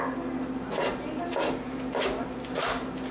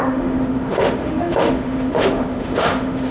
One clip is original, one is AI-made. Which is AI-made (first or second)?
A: second